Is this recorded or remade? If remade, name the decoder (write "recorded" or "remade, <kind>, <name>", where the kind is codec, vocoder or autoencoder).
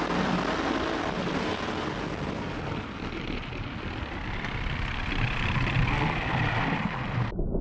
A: recorded